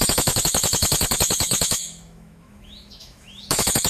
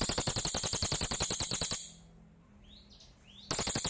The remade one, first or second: first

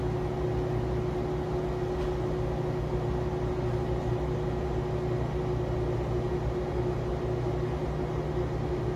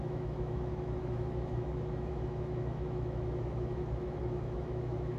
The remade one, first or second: second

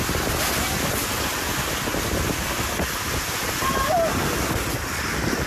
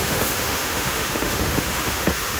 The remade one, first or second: second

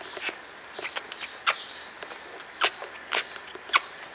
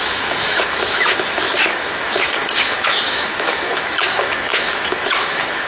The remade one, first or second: second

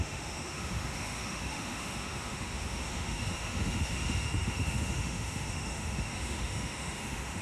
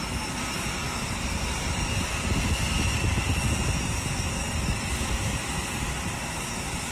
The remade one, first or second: first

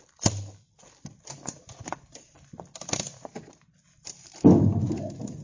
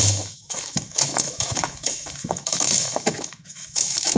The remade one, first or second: second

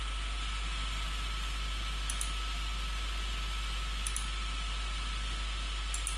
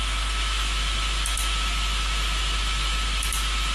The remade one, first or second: second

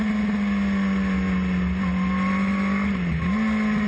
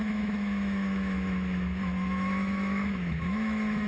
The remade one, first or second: second